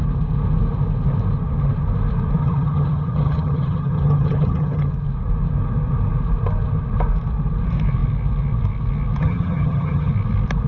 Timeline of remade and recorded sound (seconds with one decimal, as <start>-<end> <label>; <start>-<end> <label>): 0.0-2.4 recorded; 2.4-4.9 remade; 4.9-9.2 recorded; 9.2-10.1 remade; 10.1-10.7 recorded

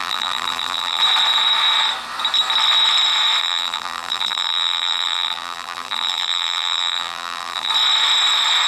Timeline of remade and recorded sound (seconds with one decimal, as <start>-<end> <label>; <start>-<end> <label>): 0.0-1.0 remade; 1.0-3.4 recorded; 3.4-7.7 remade; 7.7-8.7 recorded

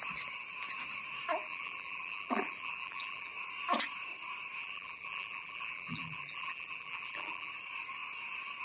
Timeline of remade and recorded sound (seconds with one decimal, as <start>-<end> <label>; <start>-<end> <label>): 0.0-1.4 recorded; 1.4-3.3 remade; 3.3-4.6 recorded; 4.6-7.5 remade; 7.5-8.6 recorded

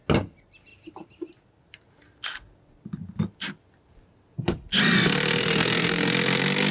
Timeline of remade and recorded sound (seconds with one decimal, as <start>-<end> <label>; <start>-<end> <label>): 0.0-5.4 recorded; 5.4-6.1 remade; 6.1-6.7 recorded

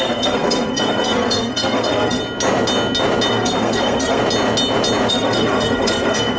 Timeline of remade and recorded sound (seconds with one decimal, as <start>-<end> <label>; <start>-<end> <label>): 0.0-2.2 remade; 2.2-3.3 recorded; 3.3-4.2 remade; 4.2-5.1 recorded; 5.1-6.4 remade

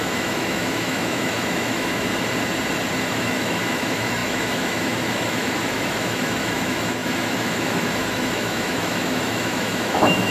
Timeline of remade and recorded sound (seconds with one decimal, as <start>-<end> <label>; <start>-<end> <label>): 0.0-2.1 remade; 2.1-3.1 recorded; 3.1-10.3 remade